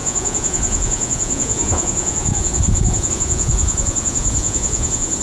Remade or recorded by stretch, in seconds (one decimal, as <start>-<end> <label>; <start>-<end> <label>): 0.0-5.2 remade